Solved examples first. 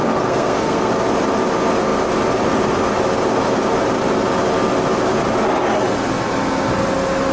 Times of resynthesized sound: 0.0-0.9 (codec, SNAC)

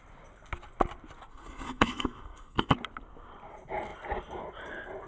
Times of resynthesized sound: 1.3-2.7 (codec, SNAC)

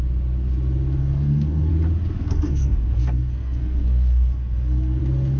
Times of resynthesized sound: 1.0-1.7 (codec, SNAC); 2.2-5.0